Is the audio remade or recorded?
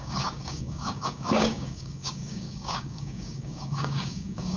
remade